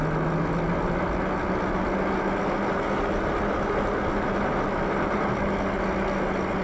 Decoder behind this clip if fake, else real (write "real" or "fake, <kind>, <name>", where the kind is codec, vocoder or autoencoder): real